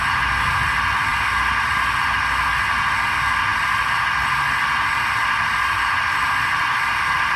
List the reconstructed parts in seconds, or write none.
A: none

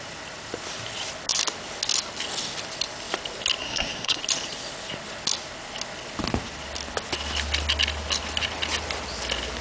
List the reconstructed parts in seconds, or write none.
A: 3.6-4.2 (codec, SNAC)

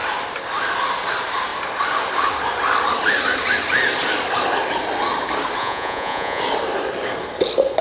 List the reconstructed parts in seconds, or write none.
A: 5.6-6.4 (vocoder, Vocos)